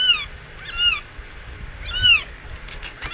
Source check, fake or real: real